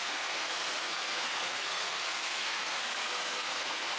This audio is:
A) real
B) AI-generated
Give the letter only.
B